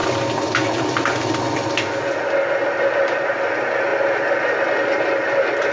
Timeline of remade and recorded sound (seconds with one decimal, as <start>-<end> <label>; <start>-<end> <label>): 0.0-5.7 recorded